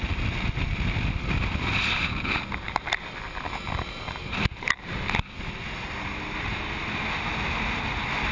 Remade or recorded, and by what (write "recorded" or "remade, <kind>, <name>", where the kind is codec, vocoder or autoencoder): recorded